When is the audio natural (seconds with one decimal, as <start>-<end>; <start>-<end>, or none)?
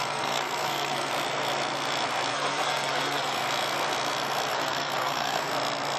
1.1-2.3; 3.4-4.5; 5.5-6.0